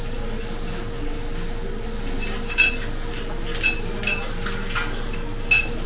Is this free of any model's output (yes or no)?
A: yes